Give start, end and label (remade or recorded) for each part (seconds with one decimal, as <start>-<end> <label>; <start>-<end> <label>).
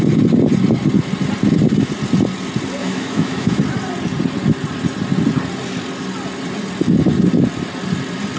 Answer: 0.0-2.8 recorded; 2.8-3.6 remade; 3.6-8.4 recorded